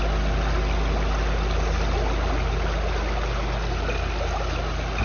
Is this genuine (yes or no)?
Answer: yes